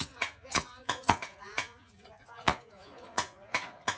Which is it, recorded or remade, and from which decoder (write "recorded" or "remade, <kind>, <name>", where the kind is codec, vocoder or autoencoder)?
remade, vocoder, Vocos